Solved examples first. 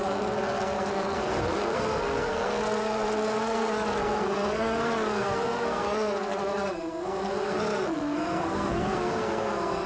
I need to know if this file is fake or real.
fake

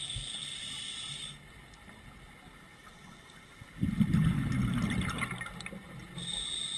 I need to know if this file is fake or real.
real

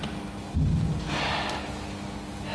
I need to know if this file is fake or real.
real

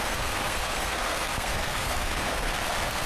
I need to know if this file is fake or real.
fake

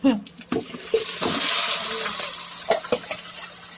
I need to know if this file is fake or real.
real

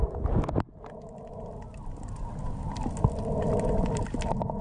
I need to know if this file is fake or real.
real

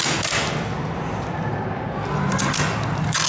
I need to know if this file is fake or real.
real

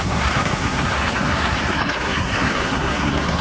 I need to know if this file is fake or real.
fake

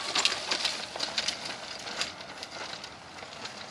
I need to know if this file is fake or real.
real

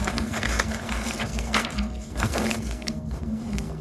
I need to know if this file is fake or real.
fake